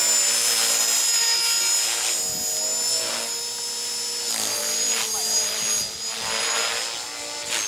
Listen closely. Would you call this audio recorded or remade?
recorded